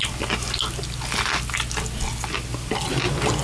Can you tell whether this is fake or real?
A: real